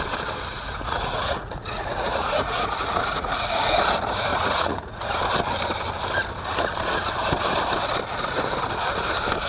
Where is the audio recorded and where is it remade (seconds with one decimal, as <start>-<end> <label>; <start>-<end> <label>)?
0.0-0.5 recorded; 0.5-3.8 remade; 3.8-4.3 recorded; 4.3-5.1 remade; 5.1-9.5 recorded

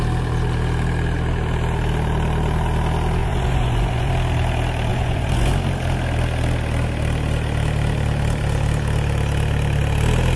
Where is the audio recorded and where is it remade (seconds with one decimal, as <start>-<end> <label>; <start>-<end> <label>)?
0.0-3.2 recorded; 3.2-4.1 remade; 4.1-4.9 recorded; 4.9-5.5 remade; 5.5-10.4 recorded

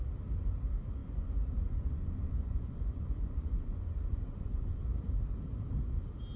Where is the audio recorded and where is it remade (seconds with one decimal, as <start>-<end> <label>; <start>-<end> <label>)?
0.0-1.0 recorded; 1.0-4.8 remade; 4.8-6.4 recorded

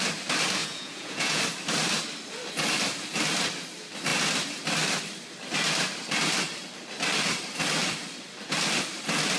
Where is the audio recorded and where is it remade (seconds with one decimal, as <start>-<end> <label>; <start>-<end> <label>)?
0.0-0.6 recorded; 0.6-1.4 remade; 1.4-9.4 recorded

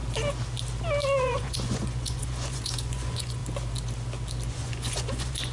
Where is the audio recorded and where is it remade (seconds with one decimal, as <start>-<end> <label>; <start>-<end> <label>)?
0.0-1.2 recorded; 1.2-3.4 remade; 3.4-4.5 recorded; 4.5-5.5 remade

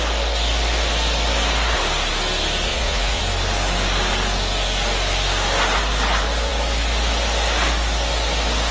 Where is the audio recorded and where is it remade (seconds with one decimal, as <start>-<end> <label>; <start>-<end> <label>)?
0.0-2.7 recorded; 2.7-3.2 remade; 3.2-8.7 recorded